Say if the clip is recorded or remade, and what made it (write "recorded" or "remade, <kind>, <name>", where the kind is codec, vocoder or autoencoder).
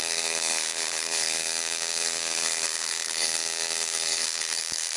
remade, codec, DAC